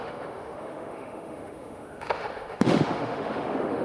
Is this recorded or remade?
remade